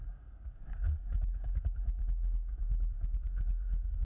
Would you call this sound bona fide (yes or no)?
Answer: no